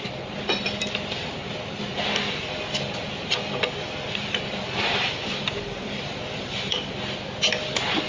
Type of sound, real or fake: real